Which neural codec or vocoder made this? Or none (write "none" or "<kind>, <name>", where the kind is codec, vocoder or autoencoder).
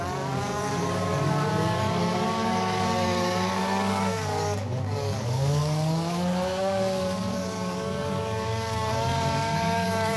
codec, DAC